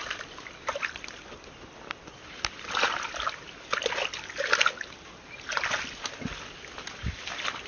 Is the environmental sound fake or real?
real